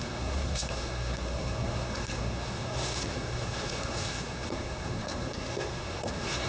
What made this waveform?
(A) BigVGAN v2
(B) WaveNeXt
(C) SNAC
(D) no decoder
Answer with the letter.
C